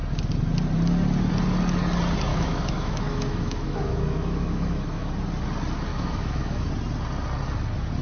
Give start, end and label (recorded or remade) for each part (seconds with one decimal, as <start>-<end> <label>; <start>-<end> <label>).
0.0-2.3 recorded; 2.3-5.1 remade; 5.1-5.9 recorded; 5.9-6.7 remade; 6.7-8.0 recorded